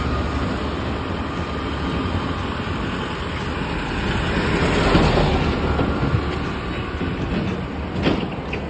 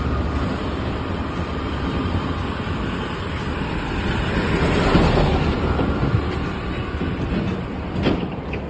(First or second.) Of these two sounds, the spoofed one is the second